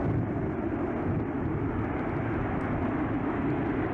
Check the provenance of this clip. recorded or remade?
recorded